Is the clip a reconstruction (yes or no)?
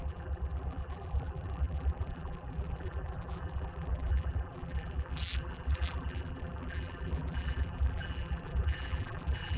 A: yes